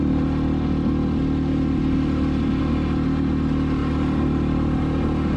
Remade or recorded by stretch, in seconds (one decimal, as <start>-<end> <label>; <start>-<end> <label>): 0.0-5.4 recorded